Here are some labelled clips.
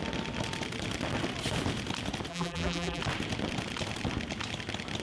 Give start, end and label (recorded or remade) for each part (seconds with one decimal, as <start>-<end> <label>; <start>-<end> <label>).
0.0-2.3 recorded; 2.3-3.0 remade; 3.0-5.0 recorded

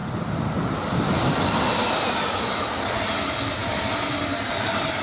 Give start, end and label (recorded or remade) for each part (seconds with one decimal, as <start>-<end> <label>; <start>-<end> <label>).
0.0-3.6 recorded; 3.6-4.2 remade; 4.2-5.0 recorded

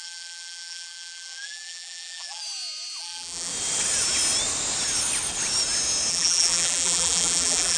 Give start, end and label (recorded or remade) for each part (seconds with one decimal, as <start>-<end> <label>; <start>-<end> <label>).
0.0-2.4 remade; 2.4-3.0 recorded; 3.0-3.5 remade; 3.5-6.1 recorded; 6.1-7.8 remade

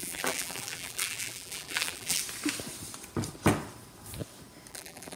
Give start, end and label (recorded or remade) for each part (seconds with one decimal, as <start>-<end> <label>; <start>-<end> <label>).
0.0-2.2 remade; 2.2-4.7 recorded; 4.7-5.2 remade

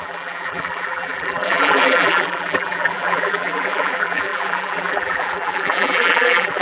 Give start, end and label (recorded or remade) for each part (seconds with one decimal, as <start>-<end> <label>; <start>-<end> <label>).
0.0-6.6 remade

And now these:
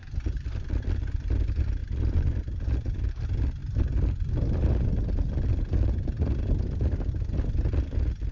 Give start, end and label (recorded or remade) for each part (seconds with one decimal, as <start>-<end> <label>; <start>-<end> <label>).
0.0-1.0 remade; 1.0-1.8 recorded; 1.8-3.1 remade; 3.1-3.6 recorded; 3.6-7.1 remade; 7.1-8.3 recorded

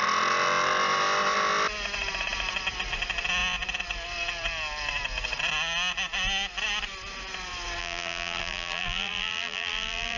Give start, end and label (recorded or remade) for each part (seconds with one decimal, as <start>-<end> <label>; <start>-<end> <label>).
0.0-7.8 recorded; 7.8-10.2 remade